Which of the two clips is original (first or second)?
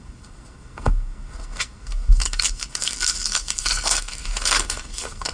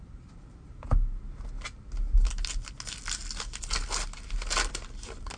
second